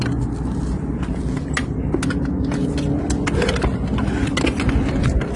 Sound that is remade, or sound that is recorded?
recorded